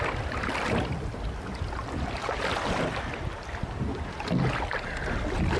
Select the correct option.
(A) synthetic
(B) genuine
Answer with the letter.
B